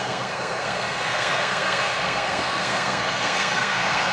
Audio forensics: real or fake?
fake